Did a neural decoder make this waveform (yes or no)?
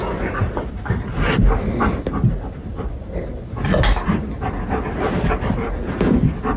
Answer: no